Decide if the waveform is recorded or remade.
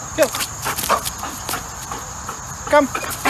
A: recorded